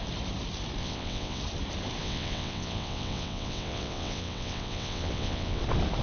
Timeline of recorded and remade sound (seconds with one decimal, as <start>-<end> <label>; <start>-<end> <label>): 0.0-0.8 recorded; 0.8-1.4 remade; 1.4-2.0 recorded; 2.0-5.6 remade; 5.6-6.0 recorded